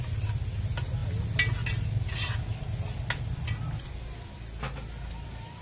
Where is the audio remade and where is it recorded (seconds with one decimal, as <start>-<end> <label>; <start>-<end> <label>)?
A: 0.0-5.6 recorded